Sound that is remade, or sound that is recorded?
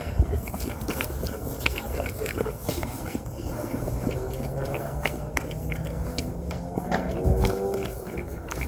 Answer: remade